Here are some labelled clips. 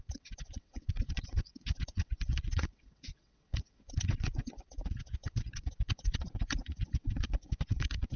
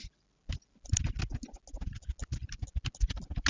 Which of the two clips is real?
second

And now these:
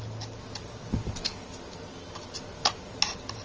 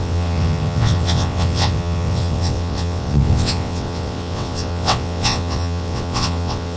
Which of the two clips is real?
first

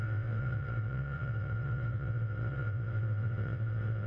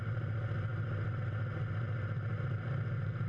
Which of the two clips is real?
second